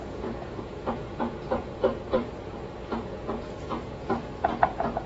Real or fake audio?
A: fake